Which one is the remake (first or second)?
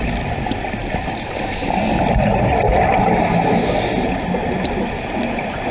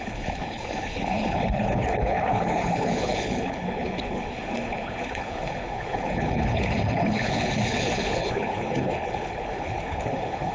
second